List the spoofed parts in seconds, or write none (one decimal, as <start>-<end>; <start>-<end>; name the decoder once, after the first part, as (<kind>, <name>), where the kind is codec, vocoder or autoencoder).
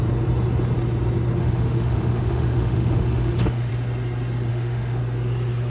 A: 1.4-3.7 (autoencoder, DAC-VAE); 4.5-5.0